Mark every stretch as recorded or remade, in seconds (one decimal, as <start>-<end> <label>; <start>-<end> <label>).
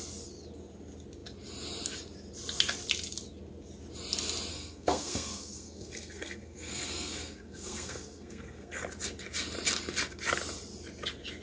0.0-4.5 recorded; 4.5-8.8 remade; 8.8-11.4 recorded